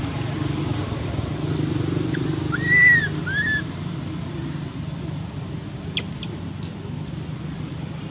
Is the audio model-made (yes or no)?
no